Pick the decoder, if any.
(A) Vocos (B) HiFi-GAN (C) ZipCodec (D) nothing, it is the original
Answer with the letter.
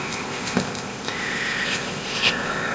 C